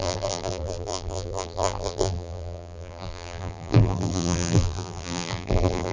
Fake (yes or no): yes